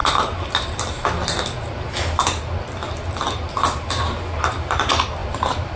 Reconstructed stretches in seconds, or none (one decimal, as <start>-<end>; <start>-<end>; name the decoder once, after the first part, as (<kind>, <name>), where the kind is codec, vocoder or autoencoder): none